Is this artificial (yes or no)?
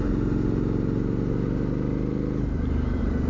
no